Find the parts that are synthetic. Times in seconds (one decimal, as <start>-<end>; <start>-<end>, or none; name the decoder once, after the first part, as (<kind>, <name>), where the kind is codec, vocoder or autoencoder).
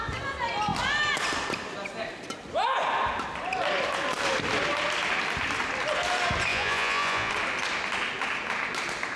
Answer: 6.5-7.3 (vocoder, Vocos)